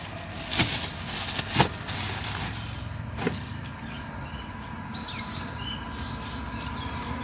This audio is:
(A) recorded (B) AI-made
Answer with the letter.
A